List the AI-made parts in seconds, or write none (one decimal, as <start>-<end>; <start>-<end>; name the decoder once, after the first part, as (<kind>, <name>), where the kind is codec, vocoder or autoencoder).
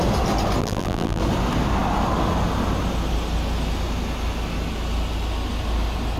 0.6-1.2 (vocoder, BigVGAN v2)